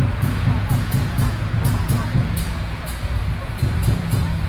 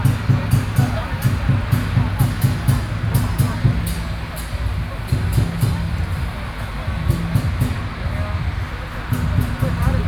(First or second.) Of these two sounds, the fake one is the first